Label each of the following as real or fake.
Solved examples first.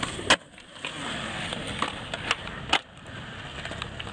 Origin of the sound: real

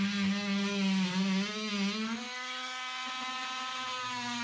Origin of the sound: real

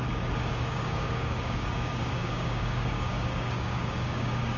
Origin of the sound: fake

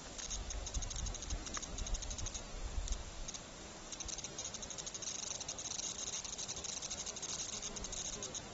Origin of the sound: real